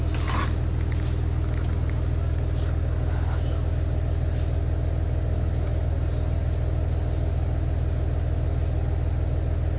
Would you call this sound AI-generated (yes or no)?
no